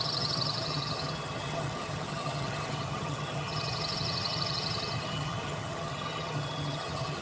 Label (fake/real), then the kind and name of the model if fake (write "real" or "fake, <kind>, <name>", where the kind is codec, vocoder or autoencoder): fake, vocoder, HiFi-GAN